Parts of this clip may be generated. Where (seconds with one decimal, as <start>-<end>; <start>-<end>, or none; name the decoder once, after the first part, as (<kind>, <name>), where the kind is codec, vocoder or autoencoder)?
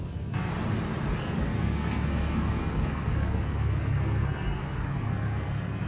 0.0-0.5 (codec, SNAC); 1.2-5.9